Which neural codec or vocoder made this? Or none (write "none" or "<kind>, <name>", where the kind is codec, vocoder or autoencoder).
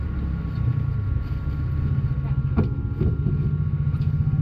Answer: none